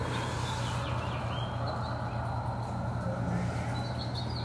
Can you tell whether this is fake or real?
real